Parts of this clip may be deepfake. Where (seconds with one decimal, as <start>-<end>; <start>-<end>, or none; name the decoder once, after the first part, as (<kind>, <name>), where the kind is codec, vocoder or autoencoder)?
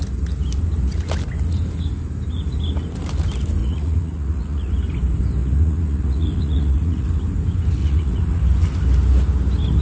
3.6-4.7 (vocoder, Vocos); 5.4-7.1; 7.8-8.4